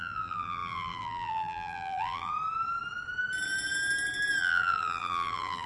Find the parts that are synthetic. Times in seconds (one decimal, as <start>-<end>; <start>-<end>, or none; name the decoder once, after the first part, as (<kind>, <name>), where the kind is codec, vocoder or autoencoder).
0.0-2.3 (vocoder, BigVGAN v2); 4.4-5.7